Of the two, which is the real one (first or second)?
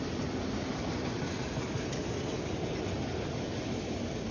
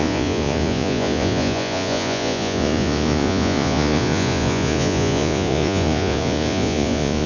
first